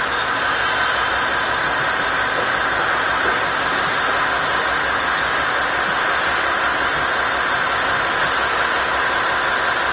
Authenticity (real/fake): real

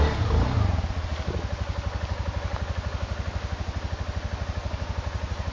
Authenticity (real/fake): real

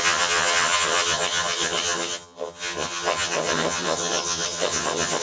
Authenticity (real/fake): fake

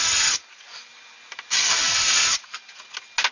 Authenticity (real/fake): real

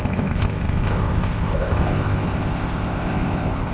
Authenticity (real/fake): fake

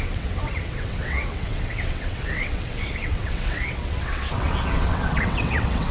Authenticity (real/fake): fake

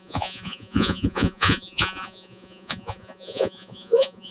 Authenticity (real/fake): fake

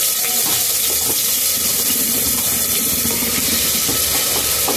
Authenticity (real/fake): real